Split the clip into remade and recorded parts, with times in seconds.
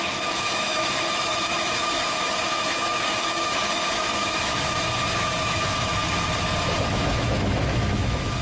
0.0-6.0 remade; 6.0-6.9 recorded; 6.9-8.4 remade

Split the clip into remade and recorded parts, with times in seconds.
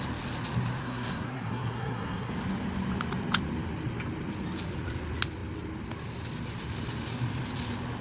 0.0-0.8 recorded; 0.8-2.3 remade; 2.3-8.0 recorded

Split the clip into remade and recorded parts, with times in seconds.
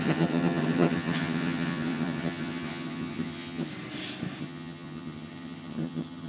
0.0-3.7 remade; 3.7-4.4 recorded; 4.4-6.3 remade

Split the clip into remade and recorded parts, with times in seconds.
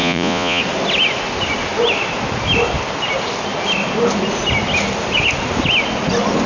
0.0-0.6 remade; 0.6-6.5 recorded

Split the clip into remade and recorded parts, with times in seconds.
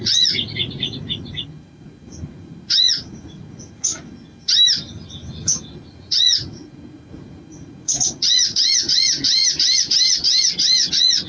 0.0-3.9 remade; 3.9-5.9 recorded; 5.9-9.4 remade; 9.4-10.9 recorded; 10.9-11.3 remade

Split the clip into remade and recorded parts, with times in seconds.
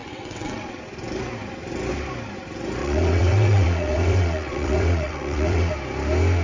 0.0-0.8 remade; 0.8-2.8 recorded; 2.8-5.7 remade; 5.7-6.4 recorded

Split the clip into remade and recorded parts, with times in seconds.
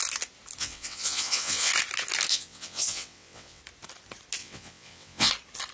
0.0-0.6 recorded; 0.6-1.7 remade; 1.7-2.3 recorded; 2.3-3.6 remade; 3.6-4.4 recorded; 4.4-5.3 remade; 5.3-5.7 recorded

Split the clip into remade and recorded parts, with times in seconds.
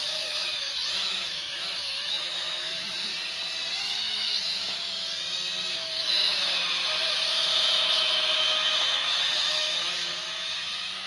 0.0-3.1 remade; 3.1-3.8 recorded; 3.8-4.8 remade; 4.8-5.7 recorded; 5.7-11.1 remade